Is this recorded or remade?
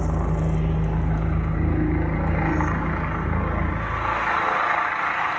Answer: recorded